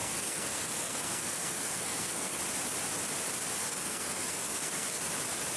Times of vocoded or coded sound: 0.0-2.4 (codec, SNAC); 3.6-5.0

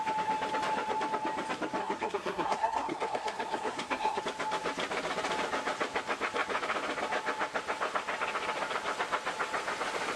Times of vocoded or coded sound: 1.8-4.2 (codec, SNAC)

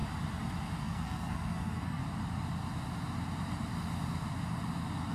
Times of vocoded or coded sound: 0.8-2.0 (codec, SNAC)

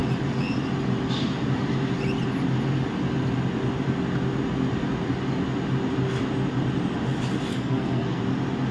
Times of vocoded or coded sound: 7.5-8.2 (codec, SNAC)

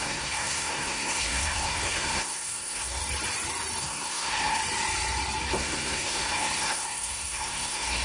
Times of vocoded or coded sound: 0.0-3.0 (codec, SNAC); 3.8-4.6; 5.5-8.0

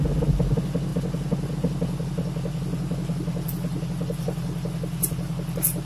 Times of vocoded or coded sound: none

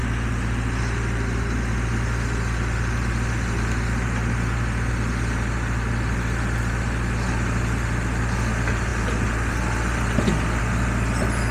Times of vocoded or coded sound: none